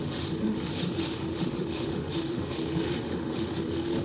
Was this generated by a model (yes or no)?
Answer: yes